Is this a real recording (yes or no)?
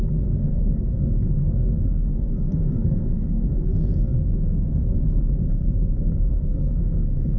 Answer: no